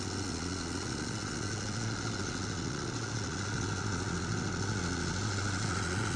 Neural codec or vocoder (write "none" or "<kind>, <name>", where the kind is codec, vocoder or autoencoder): vocoder, Vocos